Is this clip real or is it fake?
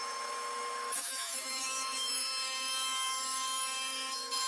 fake